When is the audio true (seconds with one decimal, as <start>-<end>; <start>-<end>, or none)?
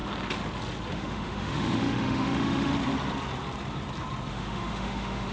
0.0-0.9; 2.7-4.3